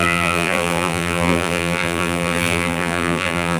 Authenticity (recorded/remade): remade